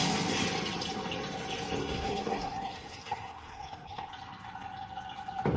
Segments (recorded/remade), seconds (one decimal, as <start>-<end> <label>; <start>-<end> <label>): 0.0-1.8 recorded; 1.8-4.1 remade; 4.1-5.6 recorded